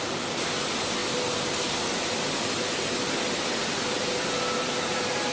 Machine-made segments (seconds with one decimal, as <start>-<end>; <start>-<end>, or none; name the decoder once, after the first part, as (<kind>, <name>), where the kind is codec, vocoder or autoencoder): none

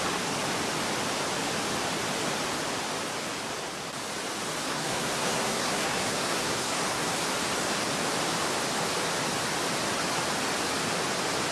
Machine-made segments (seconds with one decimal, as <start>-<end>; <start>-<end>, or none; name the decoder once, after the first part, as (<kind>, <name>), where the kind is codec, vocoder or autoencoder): 4.6-7.1 (codec, SNAC)